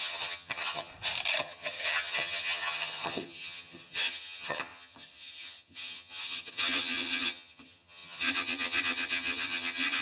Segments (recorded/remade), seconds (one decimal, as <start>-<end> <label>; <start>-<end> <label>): 0.0-0.9 remade; 0.9-1.4 recorded; 1.4-10.0 remade